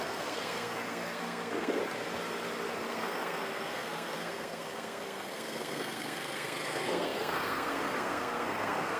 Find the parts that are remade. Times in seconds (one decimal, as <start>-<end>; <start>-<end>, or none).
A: 0.0-1.8; 2.9-9.0